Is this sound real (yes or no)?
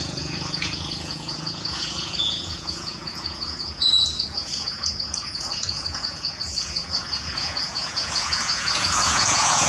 no